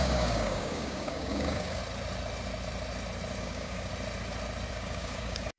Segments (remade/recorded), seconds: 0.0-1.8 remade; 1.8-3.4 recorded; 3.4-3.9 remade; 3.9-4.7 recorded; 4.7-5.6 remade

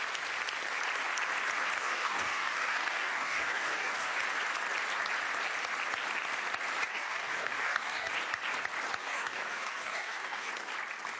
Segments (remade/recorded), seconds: 0.0-1.8 recorded; 1.8-4.2 remade; 4.2-6.9 recorded; 6.9-8.1 remade; 8.1-9.0 recorded; 9.0-10.5 remade; 10.5-11.2 recorded

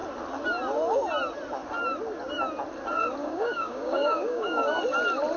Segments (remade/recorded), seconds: 0.0-3.2 recorded; 3.2-4.8 remade; 4.8-5.4 recorded